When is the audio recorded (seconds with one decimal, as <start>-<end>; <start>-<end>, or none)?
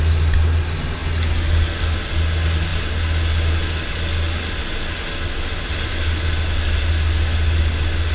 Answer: 0.0-8.1